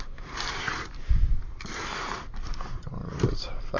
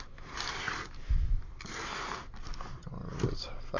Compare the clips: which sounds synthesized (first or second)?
first